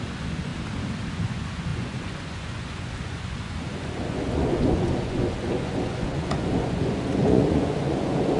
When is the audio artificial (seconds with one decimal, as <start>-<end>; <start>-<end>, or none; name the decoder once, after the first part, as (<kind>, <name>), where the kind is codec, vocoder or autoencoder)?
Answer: 0.0-0.5 (vocoder, Vocos); 1.1-8.4